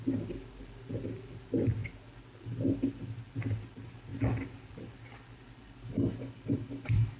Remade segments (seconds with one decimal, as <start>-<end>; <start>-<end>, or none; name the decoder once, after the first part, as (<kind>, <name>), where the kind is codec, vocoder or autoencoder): none